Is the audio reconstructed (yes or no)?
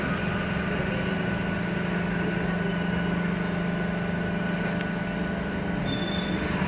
no